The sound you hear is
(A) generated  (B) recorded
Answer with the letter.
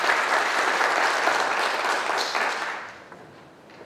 B